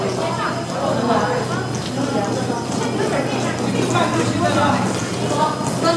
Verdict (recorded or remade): recorded